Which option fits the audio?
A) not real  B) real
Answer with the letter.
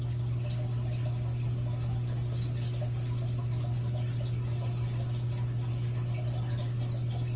B